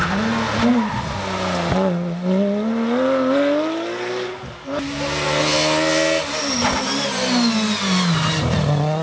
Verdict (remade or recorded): recorded